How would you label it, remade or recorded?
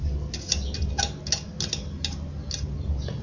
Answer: recorded